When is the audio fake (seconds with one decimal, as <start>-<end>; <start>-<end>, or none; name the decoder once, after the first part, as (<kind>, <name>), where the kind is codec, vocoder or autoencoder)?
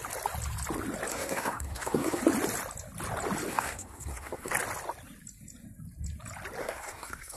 1.1-2.2 (codec, SNAC); 3.5-4.5; 6.6-7.4